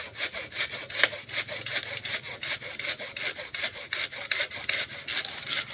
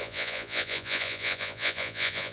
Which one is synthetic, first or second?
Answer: second